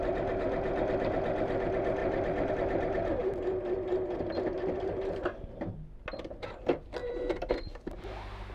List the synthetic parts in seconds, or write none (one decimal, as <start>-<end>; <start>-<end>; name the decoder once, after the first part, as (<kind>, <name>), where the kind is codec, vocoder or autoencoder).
7.0-7.5 (vocoder, BigVGAN v2)